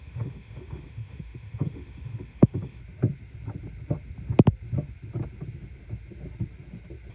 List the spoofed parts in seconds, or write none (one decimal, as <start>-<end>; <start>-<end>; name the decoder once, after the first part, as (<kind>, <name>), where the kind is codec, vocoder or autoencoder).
0.0-2.8 (autoencoder, DAC-VAE)